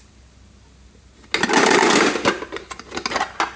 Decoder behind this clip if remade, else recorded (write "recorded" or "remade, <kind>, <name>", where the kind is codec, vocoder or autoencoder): recorded